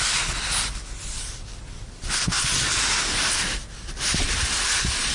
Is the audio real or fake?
real